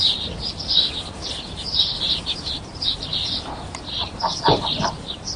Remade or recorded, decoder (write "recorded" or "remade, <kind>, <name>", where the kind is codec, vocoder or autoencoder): remade, vocoder, BigVGAN v2